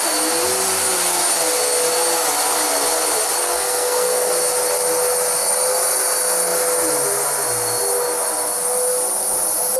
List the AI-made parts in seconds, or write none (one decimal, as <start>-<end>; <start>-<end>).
3.4-4.3